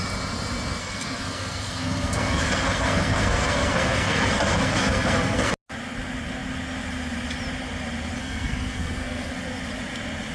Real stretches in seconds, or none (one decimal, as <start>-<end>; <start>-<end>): 0.0-0.8; 5.5-8.2; 9.3-10.3